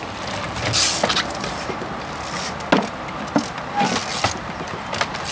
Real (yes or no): yes